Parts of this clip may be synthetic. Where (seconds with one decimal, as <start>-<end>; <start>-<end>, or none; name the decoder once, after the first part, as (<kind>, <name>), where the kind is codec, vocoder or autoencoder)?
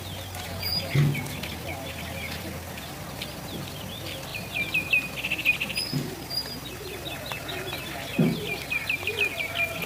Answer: none